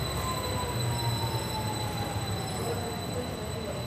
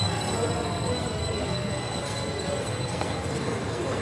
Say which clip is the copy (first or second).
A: second